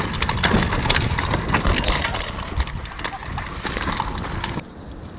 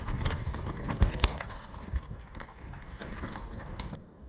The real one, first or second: first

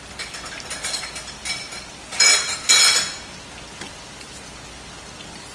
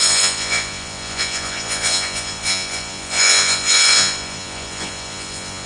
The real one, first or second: first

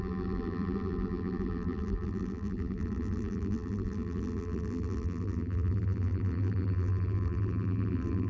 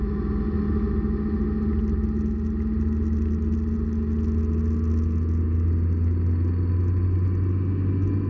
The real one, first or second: second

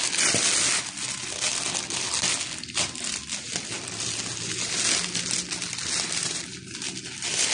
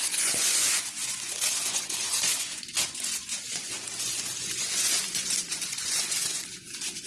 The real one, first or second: first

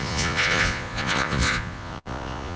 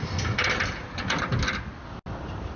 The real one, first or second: second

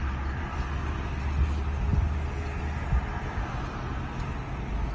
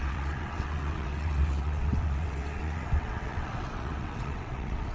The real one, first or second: first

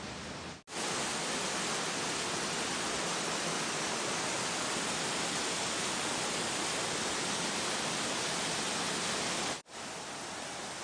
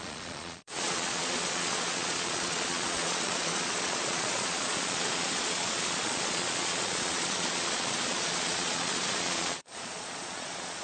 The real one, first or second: first